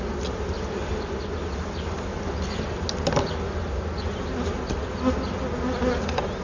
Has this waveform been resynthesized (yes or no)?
no